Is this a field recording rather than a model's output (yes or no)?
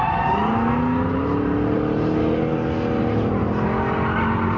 yes